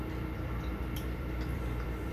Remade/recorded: remade